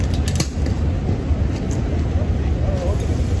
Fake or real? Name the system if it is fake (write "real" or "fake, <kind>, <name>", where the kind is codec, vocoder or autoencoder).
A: real